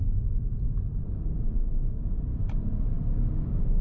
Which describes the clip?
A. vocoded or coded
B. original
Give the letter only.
B